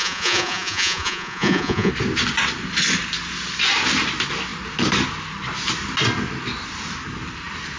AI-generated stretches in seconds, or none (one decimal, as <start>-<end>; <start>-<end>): 0.0-1.9